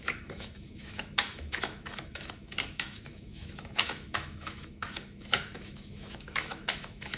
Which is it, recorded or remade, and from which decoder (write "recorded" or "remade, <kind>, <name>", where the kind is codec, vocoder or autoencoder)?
remade, autoencoder, DAC-VAE